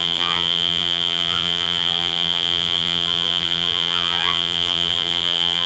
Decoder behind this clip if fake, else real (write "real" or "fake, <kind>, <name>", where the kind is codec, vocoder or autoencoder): fake, vocoder, BigVGAN v2